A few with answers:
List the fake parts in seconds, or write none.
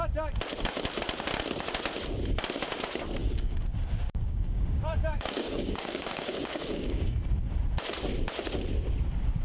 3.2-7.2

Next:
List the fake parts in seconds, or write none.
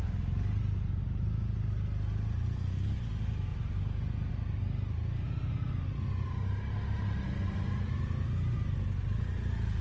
none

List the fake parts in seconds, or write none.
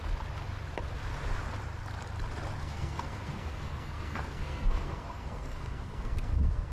2.6-6.7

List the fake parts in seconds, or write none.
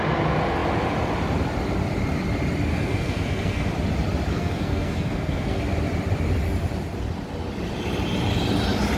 2.7-3.7; 4.3-5.6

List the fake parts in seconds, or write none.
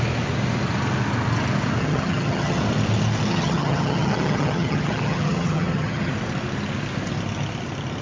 1.8-2.6; 3.3-6.1